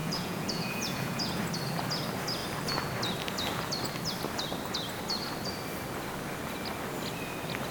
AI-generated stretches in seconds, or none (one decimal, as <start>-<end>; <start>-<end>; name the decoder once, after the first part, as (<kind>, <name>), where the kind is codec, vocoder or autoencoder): 0.0-1.4 (vocoder, Vocos)